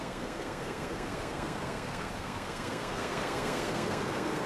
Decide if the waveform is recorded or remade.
remade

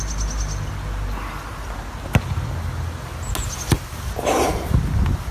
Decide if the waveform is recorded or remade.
recorded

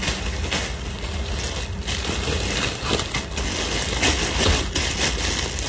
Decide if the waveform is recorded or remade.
recorded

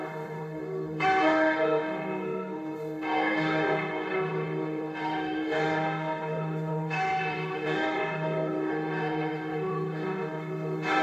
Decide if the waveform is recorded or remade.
remade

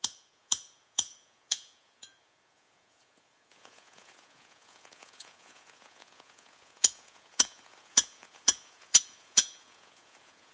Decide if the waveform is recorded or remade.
remade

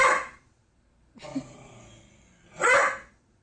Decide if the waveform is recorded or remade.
recorded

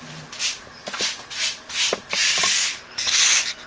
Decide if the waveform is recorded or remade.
recorded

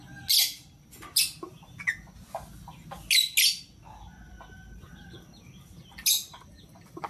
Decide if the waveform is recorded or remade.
recorded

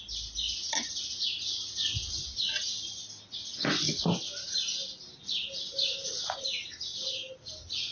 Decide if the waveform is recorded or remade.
recorded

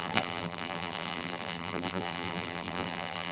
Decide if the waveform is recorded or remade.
remade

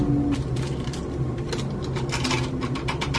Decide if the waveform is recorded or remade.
recorded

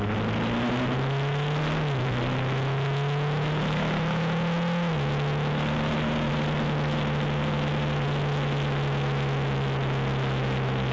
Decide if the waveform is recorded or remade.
recorded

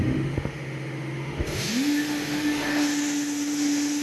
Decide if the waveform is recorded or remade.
remade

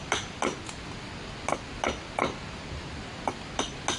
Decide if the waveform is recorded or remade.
recorded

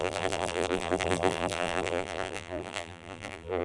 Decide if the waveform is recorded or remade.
remade